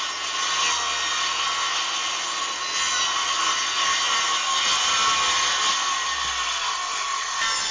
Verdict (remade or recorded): recorded